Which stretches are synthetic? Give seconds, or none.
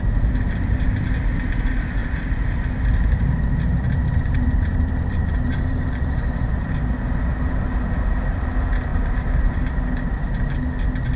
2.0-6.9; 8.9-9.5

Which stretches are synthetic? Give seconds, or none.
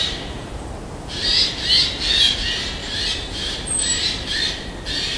0.4-1.5; 2.8-4.7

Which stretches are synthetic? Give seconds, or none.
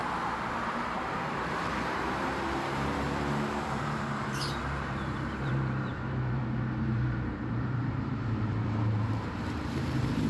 0.7-10.3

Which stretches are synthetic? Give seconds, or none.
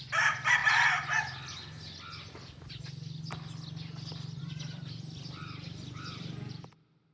0.0-0.6; 4.4-7.1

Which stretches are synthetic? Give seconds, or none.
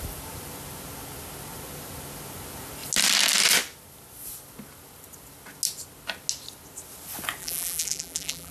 7.4-8.5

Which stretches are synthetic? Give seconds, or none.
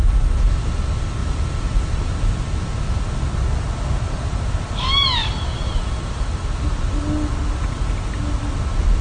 1.2-2.3; 5.2-6.9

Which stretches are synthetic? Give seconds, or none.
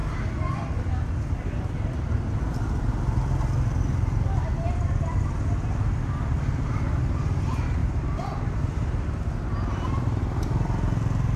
0.0-3.0; 7.8-8.8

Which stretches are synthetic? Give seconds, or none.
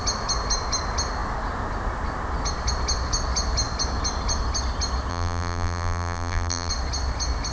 5.1-6.7